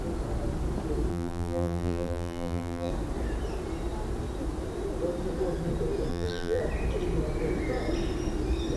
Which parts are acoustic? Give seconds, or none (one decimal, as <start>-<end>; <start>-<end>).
0.0-1.1; 2.9-6.1; 6.6-8.8